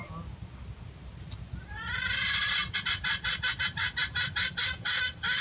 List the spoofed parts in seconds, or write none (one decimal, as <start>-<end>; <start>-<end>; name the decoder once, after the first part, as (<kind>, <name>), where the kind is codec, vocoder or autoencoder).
none